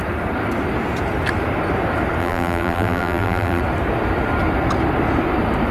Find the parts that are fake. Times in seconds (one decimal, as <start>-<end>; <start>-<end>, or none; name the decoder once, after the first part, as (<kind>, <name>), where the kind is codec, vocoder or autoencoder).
2.2-3.6 (vocoder, BigVGAN v2)